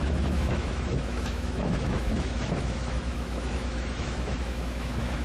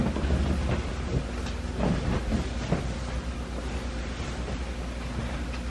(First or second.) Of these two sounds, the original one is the second